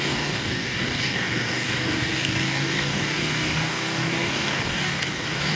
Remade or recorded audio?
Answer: remade